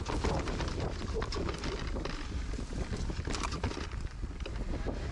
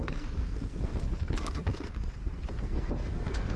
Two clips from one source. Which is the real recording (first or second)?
first